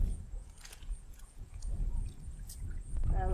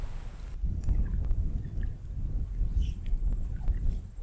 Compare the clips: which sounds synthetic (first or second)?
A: first